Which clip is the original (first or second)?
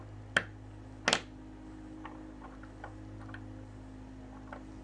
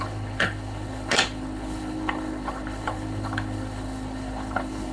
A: first